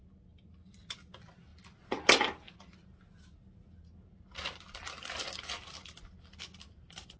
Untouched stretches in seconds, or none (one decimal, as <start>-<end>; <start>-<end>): 0.0-7.2